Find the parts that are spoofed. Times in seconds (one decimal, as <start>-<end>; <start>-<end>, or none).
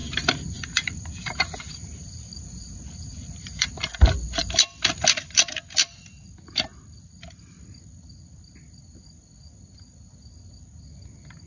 0.0-3.7